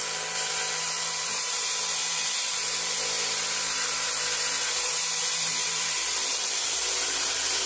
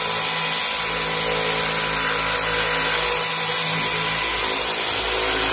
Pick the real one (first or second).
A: second